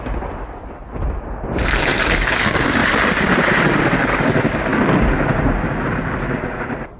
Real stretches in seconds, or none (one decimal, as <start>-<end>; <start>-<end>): 0.0-2.8; 3.8-7.0